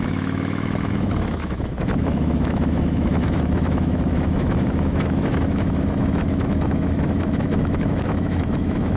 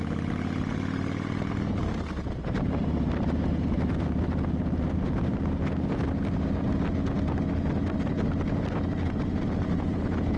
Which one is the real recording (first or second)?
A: second